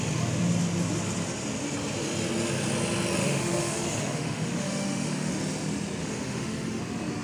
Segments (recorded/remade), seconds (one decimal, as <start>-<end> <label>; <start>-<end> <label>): 0.0-3.2 recorded; 3.2-5.3 remade; 5.3-6.0 recorded; 6.0-6.8 remade; 6.8-7.2 recorded